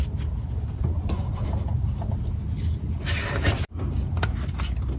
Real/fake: real